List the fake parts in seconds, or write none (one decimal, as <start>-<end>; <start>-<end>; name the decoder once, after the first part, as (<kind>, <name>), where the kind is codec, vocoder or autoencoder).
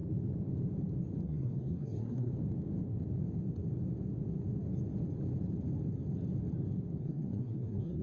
1.2-2.3 (codec, SNAC); 7.0-8.0